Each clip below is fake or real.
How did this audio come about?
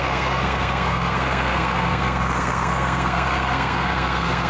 fake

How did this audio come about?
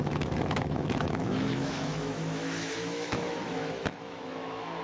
fake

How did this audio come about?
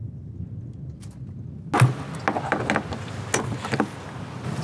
real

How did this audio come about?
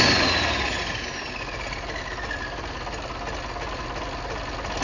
real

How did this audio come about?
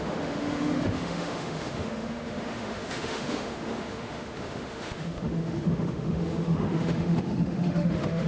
fake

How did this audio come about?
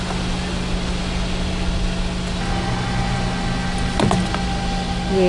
real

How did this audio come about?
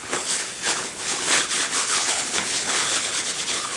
fake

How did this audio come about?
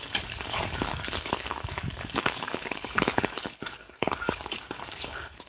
fake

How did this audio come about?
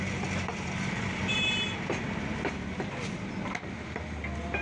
real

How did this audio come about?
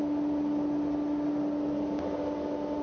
real